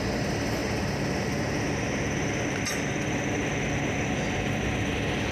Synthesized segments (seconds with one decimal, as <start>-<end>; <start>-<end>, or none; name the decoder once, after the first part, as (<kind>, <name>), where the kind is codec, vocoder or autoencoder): none